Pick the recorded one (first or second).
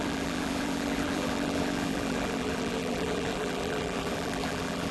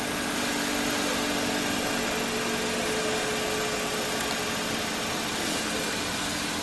second